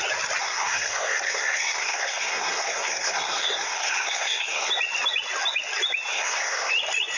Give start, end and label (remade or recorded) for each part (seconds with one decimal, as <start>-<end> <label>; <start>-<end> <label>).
0.0-0.4 recorded; 0.4-4.7 remade; 4.7-6.1 recorded; 6.1-6.7 remade; 6.7-7.2 recorded